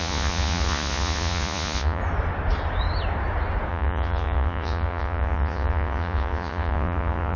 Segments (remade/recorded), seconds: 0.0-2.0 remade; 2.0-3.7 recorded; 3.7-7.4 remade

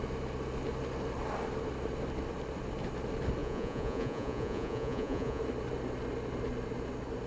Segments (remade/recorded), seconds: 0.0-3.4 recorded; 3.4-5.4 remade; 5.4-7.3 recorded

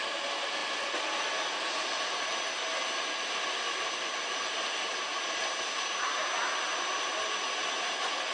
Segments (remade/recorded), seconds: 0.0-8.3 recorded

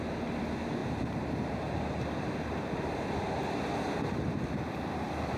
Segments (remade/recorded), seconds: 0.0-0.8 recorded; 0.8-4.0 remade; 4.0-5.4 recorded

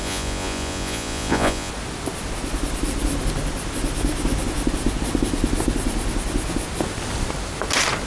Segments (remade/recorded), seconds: 0.0-1.7 remade; 1.7-8.1 recorded